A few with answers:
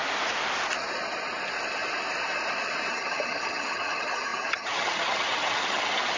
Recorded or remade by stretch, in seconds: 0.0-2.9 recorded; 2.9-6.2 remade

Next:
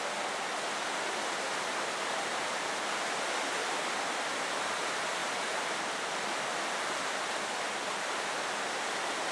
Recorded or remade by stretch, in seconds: 0.0-9.3 recorded